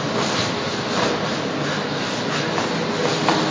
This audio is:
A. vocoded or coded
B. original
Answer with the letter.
B